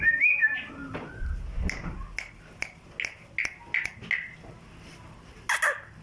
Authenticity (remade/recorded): recorded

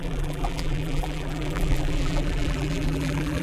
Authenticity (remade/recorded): remade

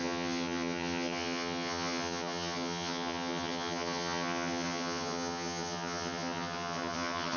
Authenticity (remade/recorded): remade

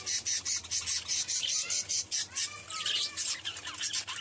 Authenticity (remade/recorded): recorded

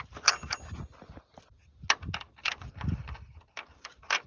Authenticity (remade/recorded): recorded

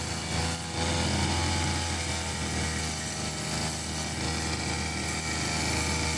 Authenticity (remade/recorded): recorded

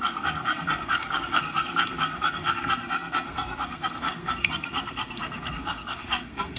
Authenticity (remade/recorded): remade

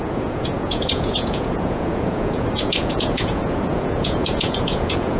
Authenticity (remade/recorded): remade